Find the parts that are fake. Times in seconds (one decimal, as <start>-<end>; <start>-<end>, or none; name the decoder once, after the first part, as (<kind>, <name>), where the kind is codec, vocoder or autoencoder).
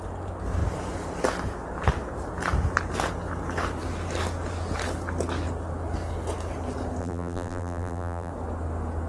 7.0-8.3 (vocoder, BigVGAN v2)